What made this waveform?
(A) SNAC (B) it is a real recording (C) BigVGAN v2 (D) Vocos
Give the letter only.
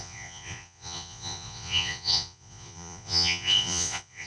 D